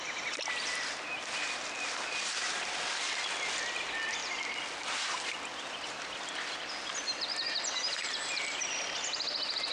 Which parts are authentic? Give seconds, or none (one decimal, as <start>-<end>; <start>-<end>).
0.0-9.7